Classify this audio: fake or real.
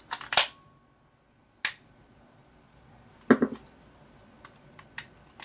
real